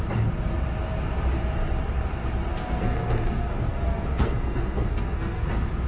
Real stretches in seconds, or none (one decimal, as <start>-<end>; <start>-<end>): 0.0-2.5; 5.5-5.9

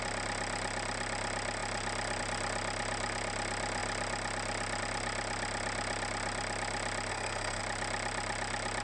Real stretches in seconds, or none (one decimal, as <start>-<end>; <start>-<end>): 0.0-7.1; 7.6-8.8

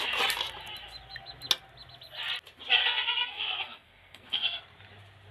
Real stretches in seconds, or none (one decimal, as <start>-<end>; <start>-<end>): 0.0-2.8; 4.6-5.3